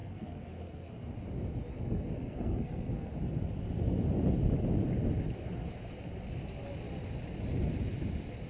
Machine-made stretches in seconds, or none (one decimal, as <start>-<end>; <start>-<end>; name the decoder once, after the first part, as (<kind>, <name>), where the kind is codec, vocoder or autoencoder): 0.0-0.9 (codec, SNAC); 1.7-3.1